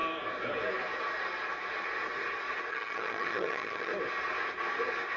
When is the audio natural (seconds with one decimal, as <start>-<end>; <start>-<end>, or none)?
0.0-2.7; 3.9-5.2